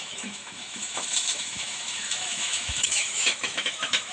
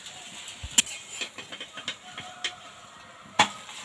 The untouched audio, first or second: second